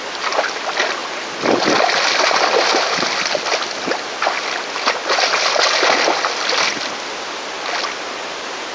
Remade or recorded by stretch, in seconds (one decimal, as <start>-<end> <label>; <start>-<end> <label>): 0.0-8.7 recorded